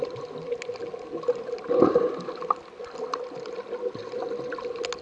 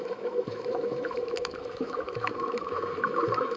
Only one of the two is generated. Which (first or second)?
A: second